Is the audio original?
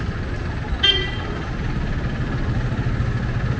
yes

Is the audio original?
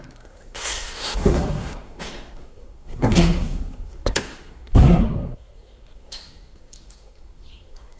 no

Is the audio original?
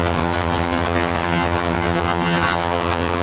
no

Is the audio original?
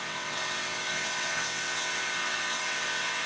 no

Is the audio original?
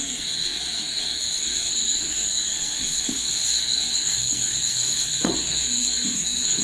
no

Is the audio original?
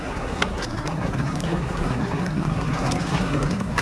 no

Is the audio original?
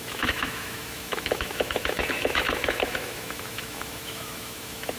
no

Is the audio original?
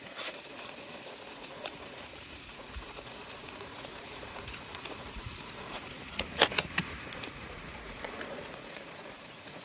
no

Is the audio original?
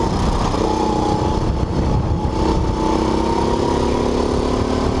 yes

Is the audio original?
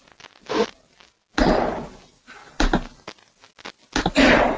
yes